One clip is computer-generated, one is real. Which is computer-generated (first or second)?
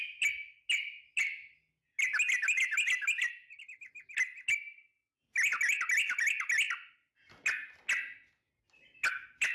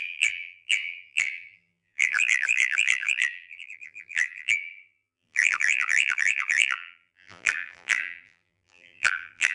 second